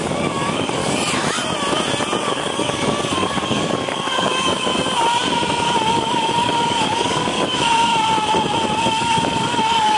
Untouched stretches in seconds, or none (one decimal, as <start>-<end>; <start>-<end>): 0.8-2.2; 4.7-5.9; 7.9-8.8